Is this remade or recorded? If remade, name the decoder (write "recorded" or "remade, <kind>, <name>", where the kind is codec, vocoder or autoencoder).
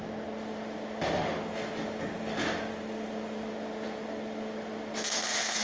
recorded